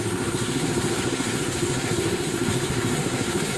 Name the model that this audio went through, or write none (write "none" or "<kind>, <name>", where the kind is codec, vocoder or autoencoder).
codec, SNAC